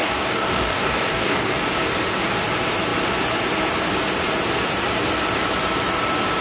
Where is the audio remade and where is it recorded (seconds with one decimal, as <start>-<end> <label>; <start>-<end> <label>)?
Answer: 0.0-1.5 remade; 1.5-6.4 recorded